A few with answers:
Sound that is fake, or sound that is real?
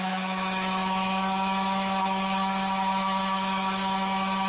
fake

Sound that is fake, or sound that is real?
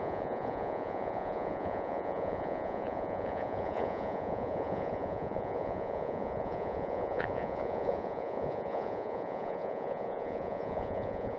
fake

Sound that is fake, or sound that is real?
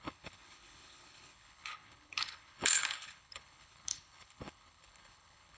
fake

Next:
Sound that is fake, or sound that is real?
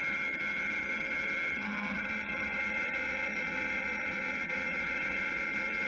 fake